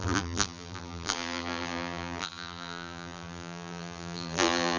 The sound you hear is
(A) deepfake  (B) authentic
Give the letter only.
A